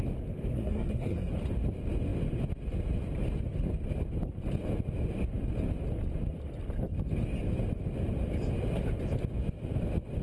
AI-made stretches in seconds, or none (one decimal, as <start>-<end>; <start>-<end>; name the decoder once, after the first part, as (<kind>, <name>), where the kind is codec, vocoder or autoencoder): 0.5-1.3 (codec, SNAC)